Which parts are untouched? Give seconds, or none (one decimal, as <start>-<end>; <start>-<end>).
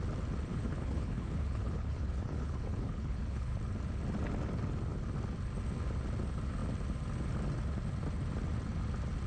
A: 0.0-0.5; 3.6-9.3